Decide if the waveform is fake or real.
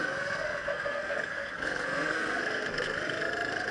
fake